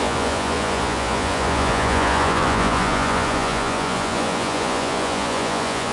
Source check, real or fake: fake